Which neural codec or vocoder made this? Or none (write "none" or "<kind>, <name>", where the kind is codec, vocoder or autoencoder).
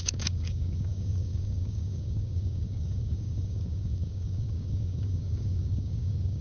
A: codec, DAC